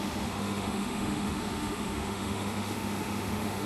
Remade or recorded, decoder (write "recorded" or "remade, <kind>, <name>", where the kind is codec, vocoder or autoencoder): remade, autoencoder, DAC-VAE